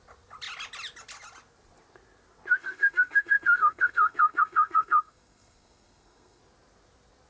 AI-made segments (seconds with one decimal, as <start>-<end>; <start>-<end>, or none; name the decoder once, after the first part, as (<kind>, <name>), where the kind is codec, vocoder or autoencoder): 2.6-6.4 (codec, SNAC)

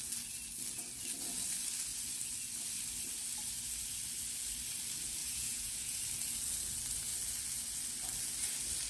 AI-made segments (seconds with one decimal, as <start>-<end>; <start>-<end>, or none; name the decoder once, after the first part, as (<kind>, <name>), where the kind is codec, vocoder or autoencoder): 5.2-6.0 (vocoder, Vocos)